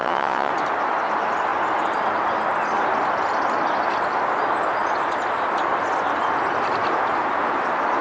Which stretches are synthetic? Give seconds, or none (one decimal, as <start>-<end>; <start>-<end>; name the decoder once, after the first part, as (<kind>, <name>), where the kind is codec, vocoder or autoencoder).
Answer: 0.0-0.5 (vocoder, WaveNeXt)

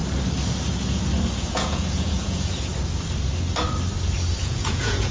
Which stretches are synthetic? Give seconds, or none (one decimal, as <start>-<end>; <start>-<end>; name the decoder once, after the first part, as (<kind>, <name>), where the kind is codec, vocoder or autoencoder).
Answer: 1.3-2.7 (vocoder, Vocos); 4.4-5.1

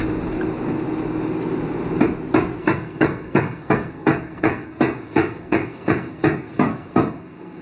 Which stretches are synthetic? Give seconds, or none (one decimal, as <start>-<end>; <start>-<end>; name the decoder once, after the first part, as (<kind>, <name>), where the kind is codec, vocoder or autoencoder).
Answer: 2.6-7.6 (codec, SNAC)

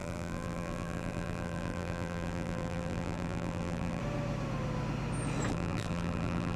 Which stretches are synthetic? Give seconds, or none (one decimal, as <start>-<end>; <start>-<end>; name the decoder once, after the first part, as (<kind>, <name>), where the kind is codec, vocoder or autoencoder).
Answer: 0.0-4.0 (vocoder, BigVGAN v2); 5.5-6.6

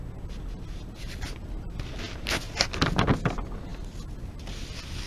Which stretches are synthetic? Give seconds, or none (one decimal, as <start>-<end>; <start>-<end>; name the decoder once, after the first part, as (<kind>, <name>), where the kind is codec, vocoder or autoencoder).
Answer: none

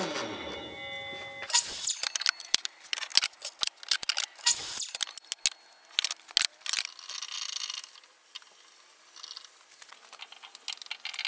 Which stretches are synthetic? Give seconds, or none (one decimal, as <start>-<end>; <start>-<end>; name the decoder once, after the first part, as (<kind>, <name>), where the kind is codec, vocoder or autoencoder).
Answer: none

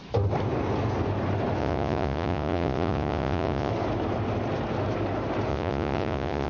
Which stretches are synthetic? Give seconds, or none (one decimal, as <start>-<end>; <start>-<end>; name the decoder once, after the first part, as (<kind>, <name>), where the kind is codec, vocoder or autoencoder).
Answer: 1.6-3.7 (vocoder, Vocos); 5.5-6.5